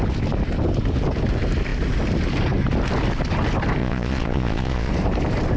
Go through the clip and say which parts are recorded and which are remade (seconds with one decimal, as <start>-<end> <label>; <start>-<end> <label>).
0.0-3.8 recorded; 3.8-4.9 remade; 4.9-5.6 recorded